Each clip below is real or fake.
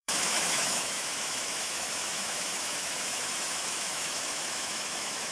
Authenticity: fake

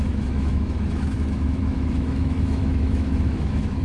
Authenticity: fake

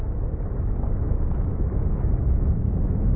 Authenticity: fake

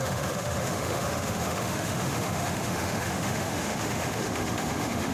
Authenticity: fake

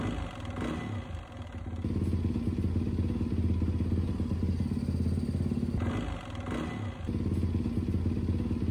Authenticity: real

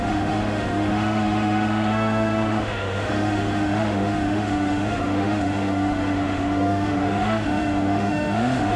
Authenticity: fake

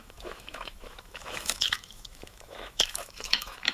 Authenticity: fake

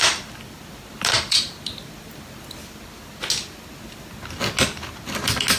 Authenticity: real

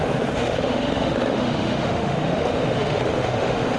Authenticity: fake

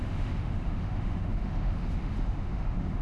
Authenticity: fake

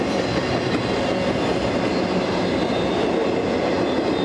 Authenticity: real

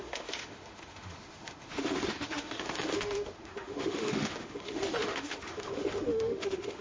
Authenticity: fake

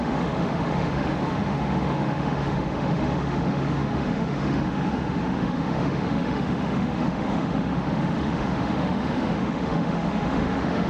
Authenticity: fake